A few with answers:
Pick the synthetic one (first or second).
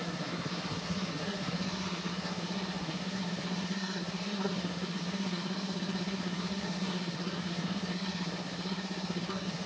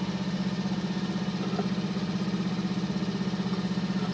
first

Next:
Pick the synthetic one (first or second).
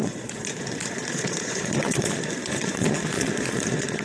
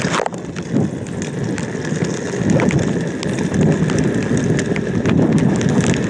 first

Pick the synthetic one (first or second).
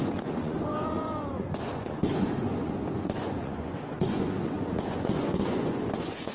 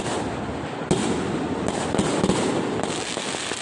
first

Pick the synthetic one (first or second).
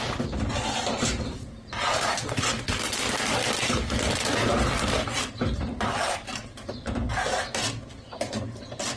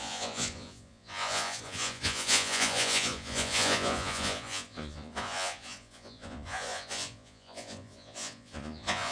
second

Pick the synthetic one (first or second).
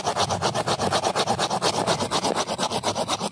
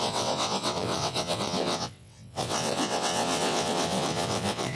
second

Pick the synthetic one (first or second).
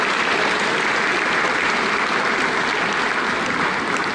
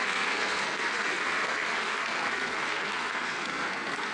second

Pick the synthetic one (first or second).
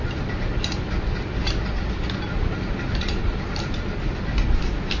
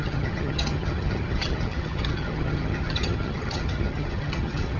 second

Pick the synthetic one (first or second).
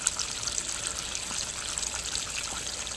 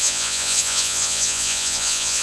second